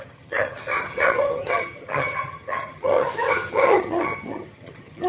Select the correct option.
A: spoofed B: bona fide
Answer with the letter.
A